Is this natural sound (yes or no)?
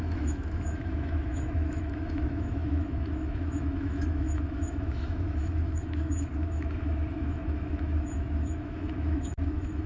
no